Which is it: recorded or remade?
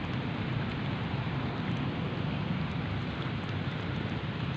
recorded